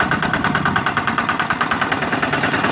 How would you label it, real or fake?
fake